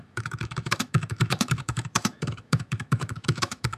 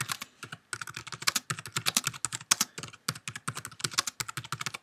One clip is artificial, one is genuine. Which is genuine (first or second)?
second